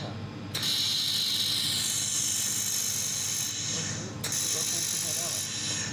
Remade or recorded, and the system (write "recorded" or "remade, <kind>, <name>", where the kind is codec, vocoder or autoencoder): recorded